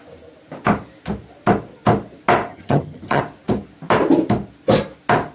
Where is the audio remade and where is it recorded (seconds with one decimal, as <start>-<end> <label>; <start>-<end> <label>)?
0.0-2.5 recorded; 2.5-3.2 remade; 3.2-5.3 recorded